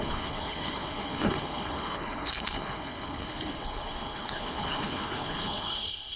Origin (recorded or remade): remade